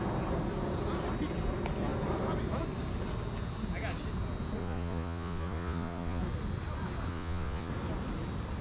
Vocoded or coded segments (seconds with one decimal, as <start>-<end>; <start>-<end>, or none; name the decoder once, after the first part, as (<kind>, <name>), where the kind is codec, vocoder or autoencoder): 4.6-6.2 (vocoder, Vocos); 7.1-7.7